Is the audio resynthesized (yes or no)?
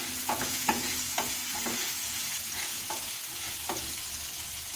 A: yes